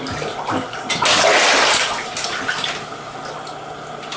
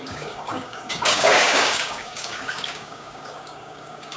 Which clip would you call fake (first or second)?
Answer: second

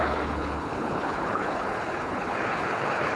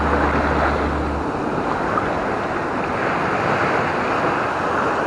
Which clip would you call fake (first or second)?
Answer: first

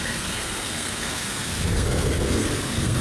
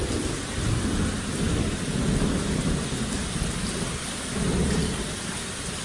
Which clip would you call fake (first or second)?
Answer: first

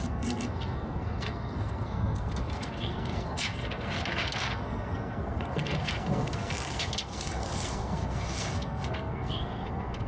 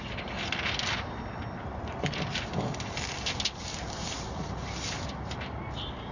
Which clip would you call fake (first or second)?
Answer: first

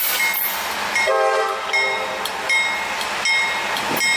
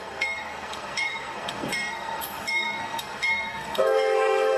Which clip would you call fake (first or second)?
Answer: second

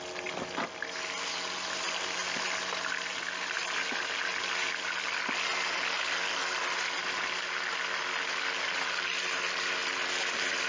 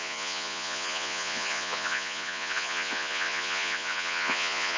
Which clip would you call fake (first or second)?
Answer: second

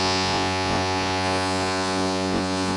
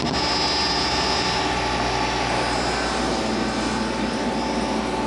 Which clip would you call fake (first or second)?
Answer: first